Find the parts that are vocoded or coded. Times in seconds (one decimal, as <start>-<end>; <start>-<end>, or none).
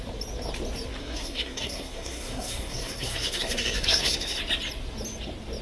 1.0-4.4